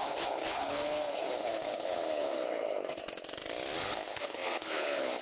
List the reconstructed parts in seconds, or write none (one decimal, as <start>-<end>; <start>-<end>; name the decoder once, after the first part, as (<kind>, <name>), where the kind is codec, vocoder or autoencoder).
0.0-3.0 (codec, HILCodec); 3.8-5.2